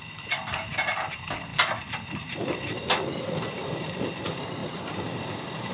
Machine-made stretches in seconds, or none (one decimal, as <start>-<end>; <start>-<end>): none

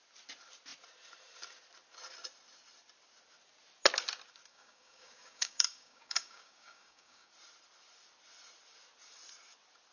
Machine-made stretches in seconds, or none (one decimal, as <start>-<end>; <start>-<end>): 4.5-7.3

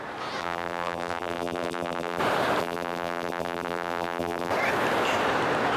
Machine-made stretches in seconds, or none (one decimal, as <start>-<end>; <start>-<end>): 0.4-2.2; 2.6-4.5

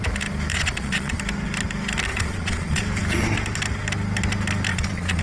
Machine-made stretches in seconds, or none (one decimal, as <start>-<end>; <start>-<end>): 0.5-1.2; 2.1-2.8; 4.7-5.2